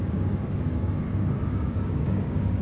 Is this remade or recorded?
remade